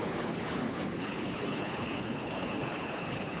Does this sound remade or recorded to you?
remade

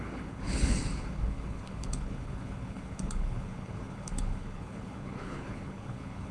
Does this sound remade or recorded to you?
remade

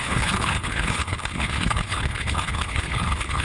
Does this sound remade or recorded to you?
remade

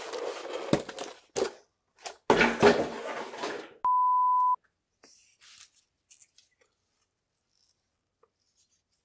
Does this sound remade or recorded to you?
recorded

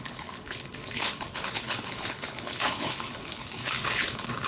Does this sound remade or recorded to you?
remade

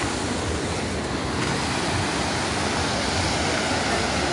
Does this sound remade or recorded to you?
recorded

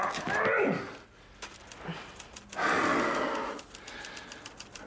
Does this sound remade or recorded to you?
recorded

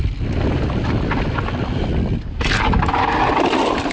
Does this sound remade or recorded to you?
recorded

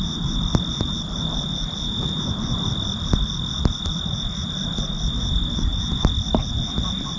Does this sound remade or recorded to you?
recorded